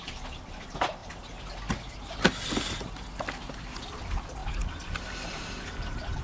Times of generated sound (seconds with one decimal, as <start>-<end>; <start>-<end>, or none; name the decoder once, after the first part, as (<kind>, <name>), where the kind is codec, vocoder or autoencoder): 4.4-6.2 (vocoder, BigVGAN v2)